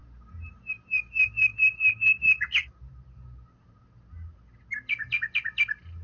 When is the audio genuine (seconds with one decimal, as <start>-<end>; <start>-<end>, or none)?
0.0-6.0